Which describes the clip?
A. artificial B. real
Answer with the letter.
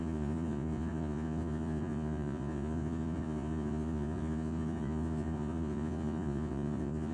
A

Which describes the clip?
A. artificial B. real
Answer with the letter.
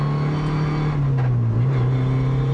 B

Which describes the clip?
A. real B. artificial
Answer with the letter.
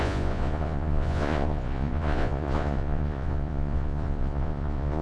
B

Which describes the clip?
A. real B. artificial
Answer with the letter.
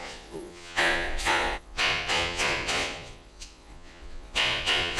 B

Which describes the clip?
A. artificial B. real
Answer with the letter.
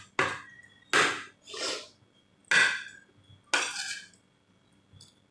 B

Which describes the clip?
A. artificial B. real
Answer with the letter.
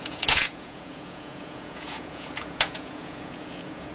A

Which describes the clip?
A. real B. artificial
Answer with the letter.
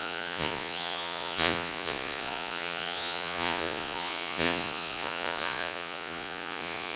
B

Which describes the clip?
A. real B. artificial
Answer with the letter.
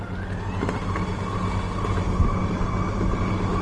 A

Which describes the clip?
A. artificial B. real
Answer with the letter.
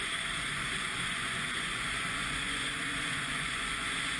A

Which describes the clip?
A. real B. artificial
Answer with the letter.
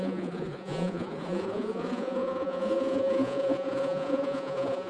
B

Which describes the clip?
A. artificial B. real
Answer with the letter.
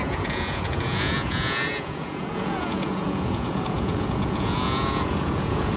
A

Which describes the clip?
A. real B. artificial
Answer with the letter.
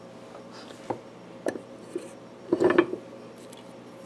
A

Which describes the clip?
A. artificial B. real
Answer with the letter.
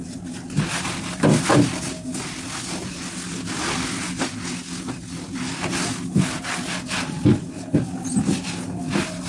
B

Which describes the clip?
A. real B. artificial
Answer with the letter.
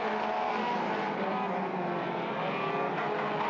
A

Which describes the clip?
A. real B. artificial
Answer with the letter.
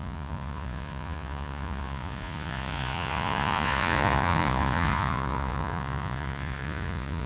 B